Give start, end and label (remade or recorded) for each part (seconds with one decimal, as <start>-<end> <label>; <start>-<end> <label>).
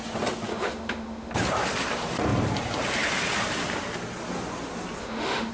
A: 0.0-0.5 recorded; 0.5-1.3 remade; 1.3-5.0 recorded; 5.0-5.5 remade